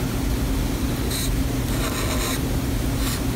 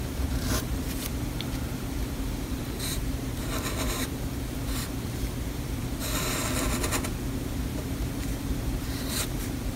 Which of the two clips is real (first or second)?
first